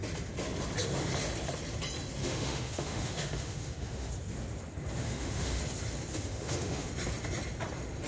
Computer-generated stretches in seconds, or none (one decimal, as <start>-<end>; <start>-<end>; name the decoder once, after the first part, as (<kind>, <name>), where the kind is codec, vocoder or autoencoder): 2.2-4.1 (autoencoder, DAC-VAE); 5.0-5.6; 6.1-6.9